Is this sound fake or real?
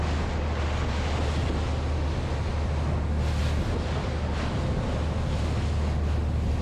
real